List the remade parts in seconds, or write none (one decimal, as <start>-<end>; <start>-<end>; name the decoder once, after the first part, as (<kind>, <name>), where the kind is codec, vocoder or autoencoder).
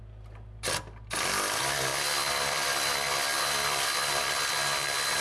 1.9-4.3 (vocoder, BigVGAN v2)